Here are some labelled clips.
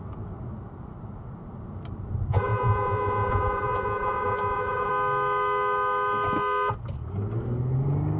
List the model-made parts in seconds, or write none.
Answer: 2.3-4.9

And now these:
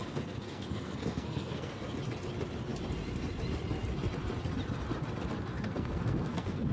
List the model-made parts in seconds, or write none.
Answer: 0.0-1.8; 5.5-6.7

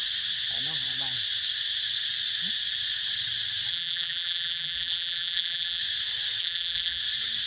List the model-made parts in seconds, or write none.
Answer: 3.7-5.8; 6.4-7.0

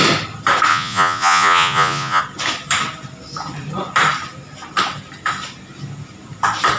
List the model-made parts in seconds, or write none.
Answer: 0.7-2.2